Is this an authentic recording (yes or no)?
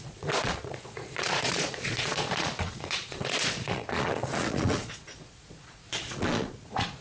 no